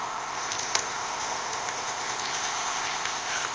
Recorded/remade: remade